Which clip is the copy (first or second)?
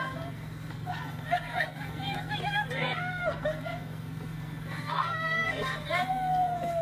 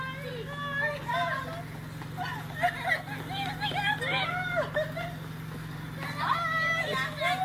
first